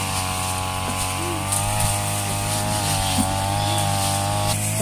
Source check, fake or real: real